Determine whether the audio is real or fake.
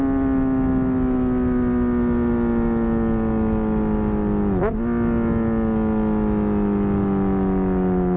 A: real